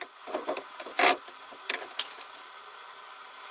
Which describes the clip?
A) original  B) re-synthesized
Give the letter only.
A